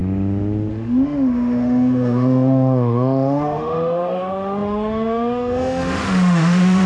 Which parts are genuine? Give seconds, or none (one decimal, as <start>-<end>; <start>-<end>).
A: 0.0-0.7